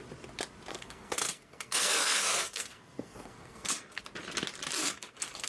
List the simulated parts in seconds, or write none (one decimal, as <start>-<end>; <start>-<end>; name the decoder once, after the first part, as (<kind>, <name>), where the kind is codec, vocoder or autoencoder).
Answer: 0.7-4.0 (codec, SNAC); 4.8-5.5